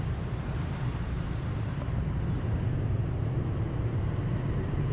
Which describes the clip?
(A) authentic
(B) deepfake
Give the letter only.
B